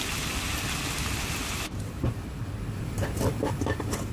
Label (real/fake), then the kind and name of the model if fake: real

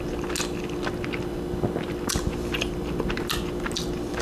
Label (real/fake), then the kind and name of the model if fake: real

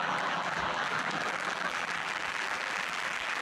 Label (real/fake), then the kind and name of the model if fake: fake, vocoder, BigVGAN v2